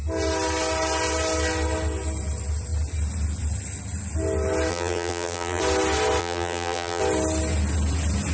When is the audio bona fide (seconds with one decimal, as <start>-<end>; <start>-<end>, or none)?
0.0-4.7; 5.6-6.2; 7.0-8.3

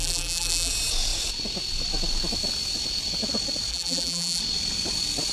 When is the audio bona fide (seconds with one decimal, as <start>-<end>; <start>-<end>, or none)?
0.7-3.7; 4.4-5.3